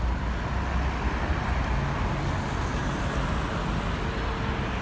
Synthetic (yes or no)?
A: no